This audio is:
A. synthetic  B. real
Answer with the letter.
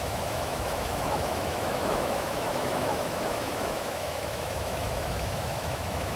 A